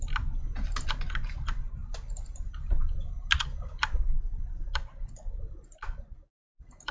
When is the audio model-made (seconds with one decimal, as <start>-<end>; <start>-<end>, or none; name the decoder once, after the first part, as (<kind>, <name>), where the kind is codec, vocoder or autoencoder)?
none